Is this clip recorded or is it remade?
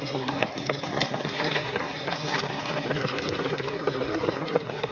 remade